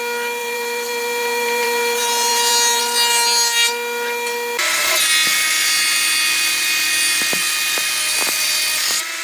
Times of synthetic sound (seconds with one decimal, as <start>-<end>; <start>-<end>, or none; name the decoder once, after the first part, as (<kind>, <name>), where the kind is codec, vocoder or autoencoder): 0.4-2.8 (vocoder, BigVGAN v2)